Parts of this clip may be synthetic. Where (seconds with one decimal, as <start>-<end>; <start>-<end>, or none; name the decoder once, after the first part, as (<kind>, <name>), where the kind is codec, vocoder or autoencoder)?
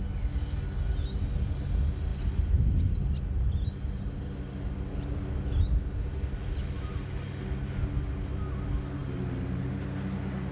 none